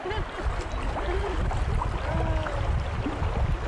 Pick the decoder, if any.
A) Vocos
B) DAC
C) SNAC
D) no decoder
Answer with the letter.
D